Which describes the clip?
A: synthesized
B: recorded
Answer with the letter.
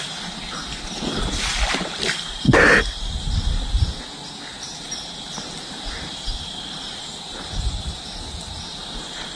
B